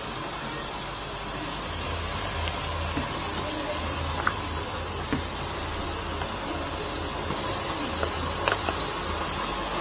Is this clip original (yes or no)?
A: yes